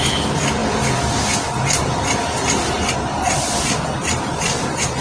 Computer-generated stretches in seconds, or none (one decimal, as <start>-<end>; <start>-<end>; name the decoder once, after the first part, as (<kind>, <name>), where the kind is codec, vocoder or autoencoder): none